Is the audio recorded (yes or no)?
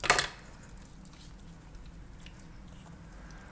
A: yes